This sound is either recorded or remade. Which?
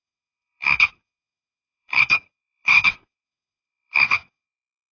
remade